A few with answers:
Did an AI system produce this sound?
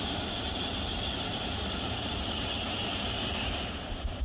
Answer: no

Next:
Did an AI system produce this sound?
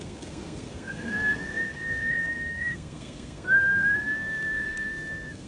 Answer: yes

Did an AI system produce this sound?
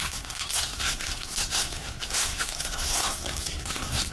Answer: yes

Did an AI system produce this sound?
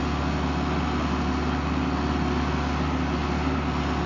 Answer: no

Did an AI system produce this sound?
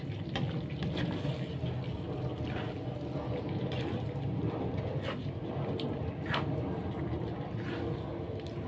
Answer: no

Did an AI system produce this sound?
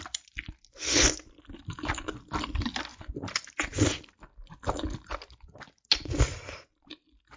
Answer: no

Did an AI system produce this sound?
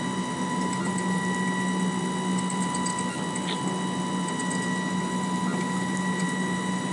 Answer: no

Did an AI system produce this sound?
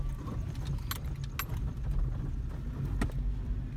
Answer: no